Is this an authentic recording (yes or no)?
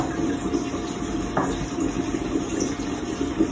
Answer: yes